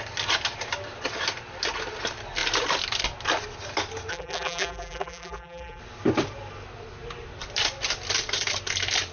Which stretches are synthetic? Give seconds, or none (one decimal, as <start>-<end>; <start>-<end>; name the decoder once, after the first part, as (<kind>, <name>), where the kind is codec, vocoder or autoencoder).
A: 4.1-5.8 (vocoder, BigVGAN v2)